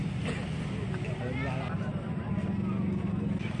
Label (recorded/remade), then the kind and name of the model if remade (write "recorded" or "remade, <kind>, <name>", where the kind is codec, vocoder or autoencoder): recorded